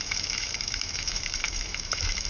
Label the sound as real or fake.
fake